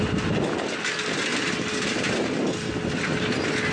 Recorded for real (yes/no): yes